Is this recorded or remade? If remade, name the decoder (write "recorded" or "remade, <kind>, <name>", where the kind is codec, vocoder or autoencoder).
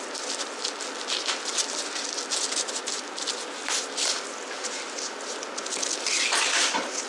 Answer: recorded